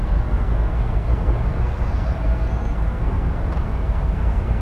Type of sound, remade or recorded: remade